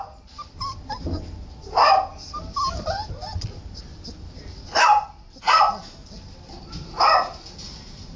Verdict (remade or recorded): recorded